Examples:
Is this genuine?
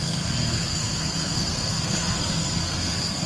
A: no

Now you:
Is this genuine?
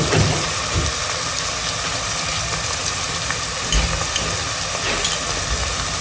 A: yes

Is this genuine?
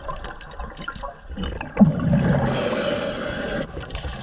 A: yes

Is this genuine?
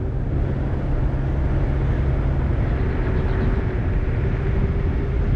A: yes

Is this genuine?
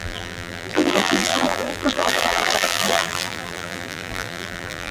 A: no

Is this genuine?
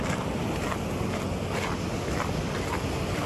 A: yes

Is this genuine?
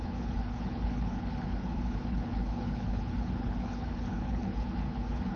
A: no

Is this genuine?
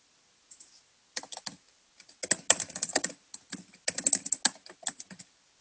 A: yes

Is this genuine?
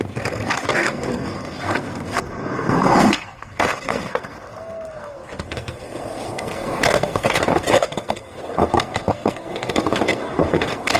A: no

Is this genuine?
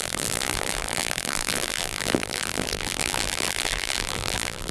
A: no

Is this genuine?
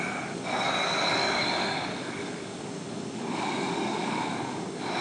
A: no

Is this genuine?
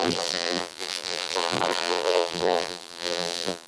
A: no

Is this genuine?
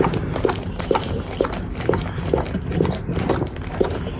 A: yes